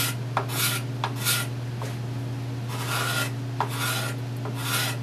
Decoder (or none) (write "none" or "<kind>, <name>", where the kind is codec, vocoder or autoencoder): none